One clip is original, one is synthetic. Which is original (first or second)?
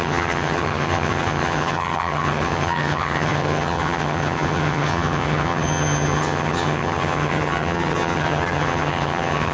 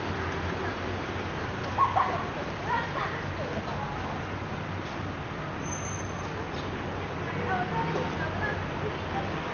second